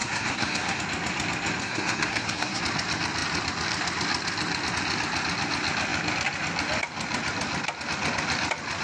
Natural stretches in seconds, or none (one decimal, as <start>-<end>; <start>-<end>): 0.8-1.6; 2.6-8.8